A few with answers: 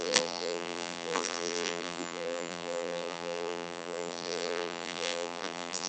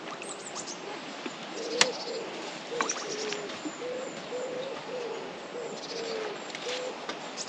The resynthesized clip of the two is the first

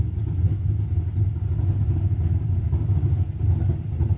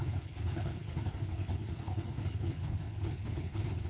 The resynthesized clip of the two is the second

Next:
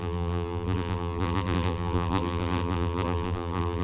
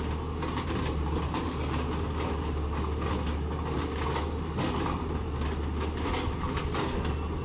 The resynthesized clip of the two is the first